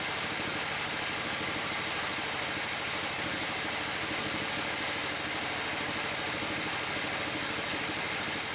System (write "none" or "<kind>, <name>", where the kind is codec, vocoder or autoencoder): none